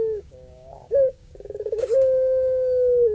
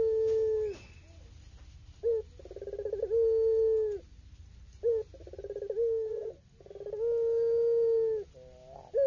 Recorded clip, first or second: second